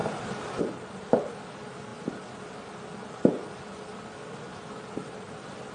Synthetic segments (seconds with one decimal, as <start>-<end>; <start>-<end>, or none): none